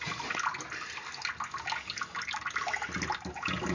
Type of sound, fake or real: real